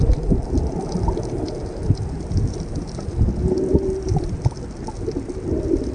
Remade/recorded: recorded